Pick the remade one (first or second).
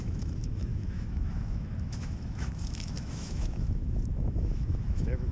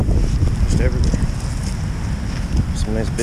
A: first